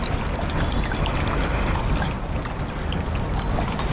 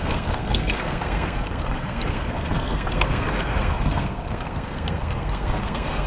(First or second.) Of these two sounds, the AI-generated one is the second